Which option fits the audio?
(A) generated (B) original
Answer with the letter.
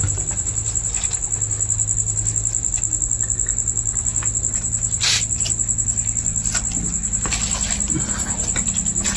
B